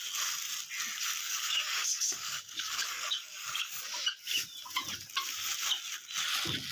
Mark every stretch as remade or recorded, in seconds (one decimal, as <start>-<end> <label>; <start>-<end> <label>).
0.0-1.2 recorded; 1.2-3.7 remade; 3.7-6.7 recorded